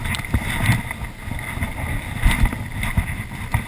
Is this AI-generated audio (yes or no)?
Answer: no